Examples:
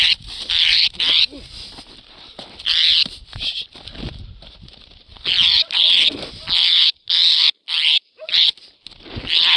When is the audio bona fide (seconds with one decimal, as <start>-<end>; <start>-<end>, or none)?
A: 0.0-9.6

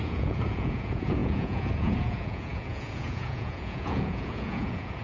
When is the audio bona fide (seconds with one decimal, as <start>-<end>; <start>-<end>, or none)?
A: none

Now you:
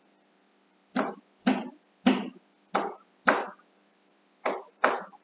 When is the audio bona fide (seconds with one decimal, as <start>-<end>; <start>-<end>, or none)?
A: 0.0-5.2

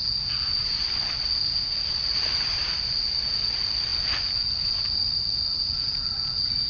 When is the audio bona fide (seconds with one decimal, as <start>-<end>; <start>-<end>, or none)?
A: 0.0-6.7

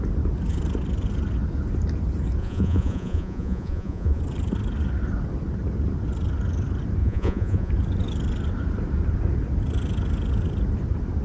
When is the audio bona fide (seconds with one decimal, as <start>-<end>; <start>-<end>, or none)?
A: 0.0-2.4; 4.2-7.0; 7.7-11.2

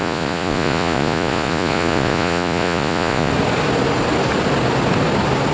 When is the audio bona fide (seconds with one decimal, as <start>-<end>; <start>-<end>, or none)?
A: 3.3-5.5

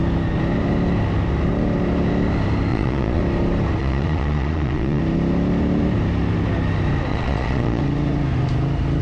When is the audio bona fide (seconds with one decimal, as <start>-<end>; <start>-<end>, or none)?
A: 0.0-2.7; 3.2-3.8; 5.0-7.1; 7.8-9.0

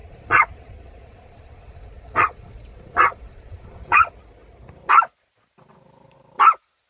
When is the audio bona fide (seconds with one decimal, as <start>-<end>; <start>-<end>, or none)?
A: 4.1-6.9